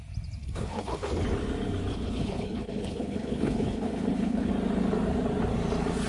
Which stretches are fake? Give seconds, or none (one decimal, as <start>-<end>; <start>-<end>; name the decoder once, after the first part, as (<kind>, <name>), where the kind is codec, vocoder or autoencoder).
0.4-1.1 (codec, HILCodec); 1.9-4.5